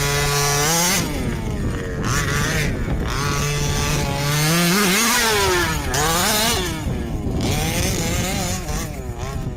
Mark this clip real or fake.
real